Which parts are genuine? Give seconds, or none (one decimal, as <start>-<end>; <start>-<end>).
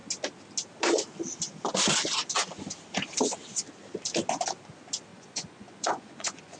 0.0-5.1